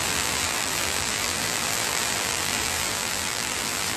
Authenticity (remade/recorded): remade